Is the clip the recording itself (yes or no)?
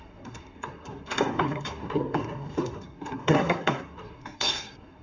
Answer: no